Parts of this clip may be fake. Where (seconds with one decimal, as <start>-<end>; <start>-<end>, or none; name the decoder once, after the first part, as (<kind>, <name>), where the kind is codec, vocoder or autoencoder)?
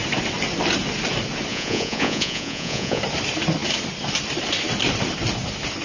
1.5-3.0 (vocoder, Vocos)